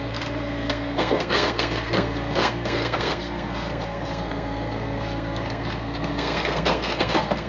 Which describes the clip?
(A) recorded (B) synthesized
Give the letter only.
B